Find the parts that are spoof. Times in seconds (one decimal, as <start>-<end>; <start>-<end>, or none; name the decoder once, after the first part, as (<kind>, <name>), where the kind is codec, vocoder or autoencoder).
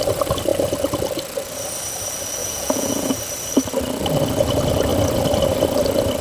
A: 2.4-3.1 (vocoder, Vocos)